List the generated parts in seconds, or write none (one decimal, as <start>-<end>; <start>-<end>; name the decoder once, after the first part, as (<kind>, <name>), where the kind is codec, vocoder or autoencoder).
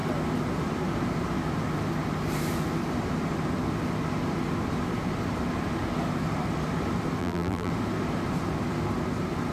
7.2-7.7 (vocoder, BigVGAN v2)